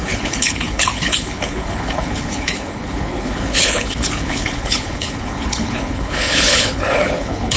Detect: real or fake fake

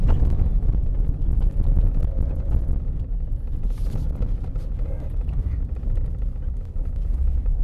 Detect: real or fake real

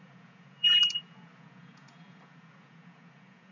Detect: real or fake fake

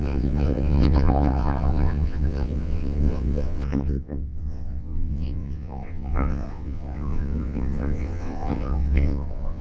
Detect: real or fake fake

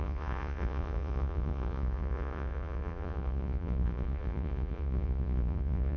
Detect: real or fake fake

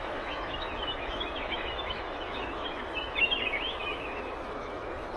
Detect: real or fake fake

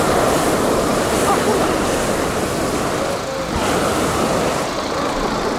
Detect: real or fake real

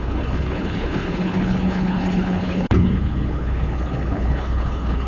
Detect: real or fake fake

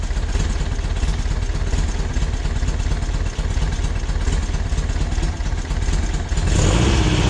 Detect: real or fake real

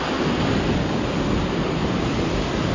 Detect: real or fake real